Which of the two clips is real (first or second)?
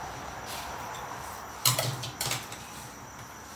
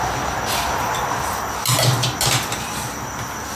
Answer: second